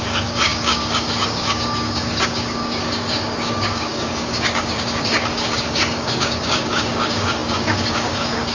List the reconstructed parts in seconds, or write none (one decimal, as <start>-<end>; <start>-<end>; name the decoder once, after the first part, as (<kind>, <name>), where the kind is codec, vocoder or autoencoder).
0.0-8.5 (codec, DAC)